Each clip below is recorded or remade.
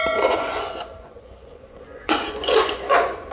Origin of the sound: remade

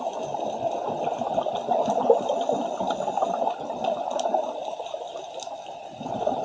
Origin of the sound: recorded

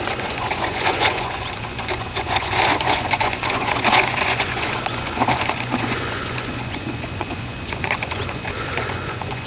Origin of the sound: remade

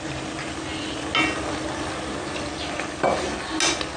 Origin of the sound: recorded